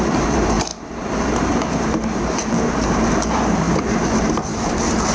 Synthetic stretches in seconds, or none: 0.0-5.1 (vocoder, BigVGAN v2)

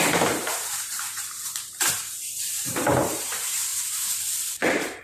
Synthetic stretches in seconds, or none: 0.0-3.7 (vocoder, BigVGAN v2); 4.6-5.0

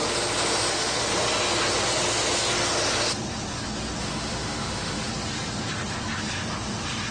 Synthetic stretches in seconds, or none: 0.7-1.1 (autoencoder, DAC-VAE); 4.0-5.1